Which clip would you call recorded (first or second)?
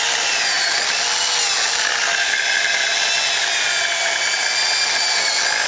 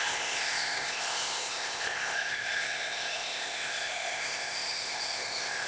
first